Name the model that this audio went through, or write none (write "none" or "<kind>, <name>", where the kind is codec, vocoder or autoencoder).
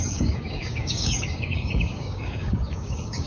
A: codec, DAC